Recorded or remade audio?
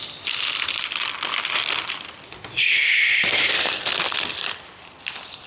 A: remade